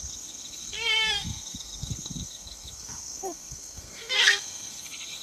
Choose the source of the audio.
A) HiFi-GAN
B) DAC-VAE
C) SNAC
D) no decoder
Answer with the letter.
C